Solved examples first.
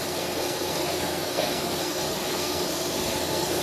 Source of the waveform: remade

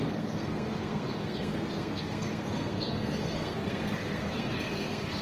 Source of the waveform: remade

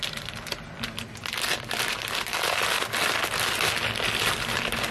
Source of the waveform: recorded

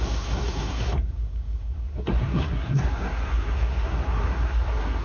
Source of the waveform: remade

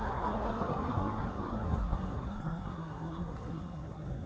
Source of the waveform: remade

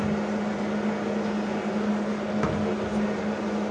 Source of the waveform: recorded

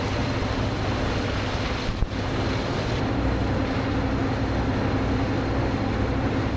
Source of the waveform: recorded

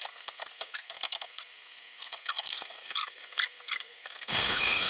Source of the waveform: remade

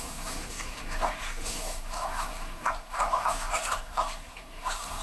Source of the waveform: remade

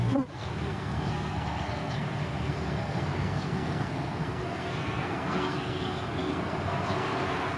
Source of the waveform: remade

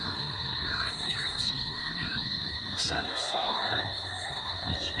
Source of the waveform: remade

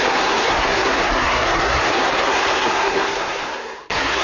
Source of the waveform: remade